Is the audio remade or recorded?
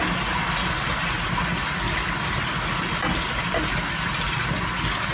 recorded